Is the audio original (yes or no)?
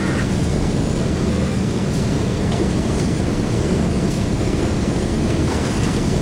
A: no